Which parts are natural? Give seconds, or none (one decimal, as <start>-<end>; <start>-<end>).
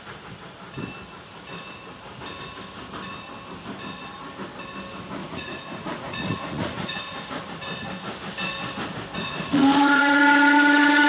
0.0-5.2; 7.0-9.2; 10.2-11.1